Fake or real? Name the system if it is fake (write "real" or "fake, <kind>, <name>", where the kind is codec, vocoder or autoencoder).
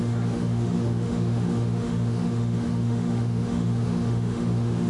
fake, autoencoder, DAC-VAE